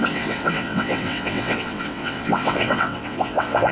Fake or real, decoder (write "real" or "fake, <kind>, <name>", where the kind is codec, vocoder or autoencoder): fake, vocoder, WaveNeXt